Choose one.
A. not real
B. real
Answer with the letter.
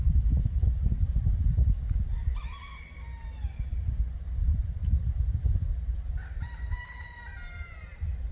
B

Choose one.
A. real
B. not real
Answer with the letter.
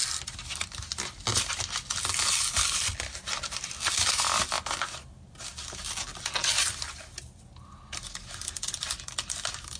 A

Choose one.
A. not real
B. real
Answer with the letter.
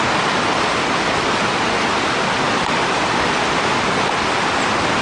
B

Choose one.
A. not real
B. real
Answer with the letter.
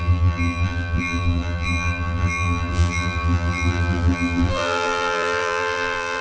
A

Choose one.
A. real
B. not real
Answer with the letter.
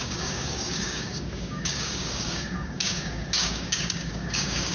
B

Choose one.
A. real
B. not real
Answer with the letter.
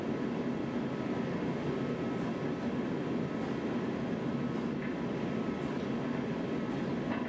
A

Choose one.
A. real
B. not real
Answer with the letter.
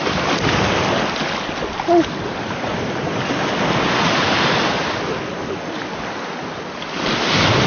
A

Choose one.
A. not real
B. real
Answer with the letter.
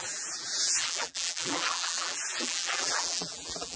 A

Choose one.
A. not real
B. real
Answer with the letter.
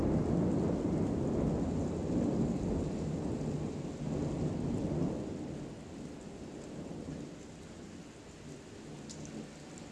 B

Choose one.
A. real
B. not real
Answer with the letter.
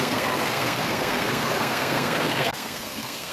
B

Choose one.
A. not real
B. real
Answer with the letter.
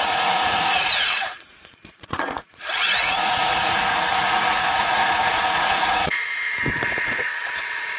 A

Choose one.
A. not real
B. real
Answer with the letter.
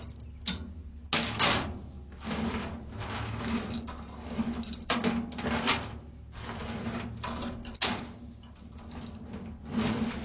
B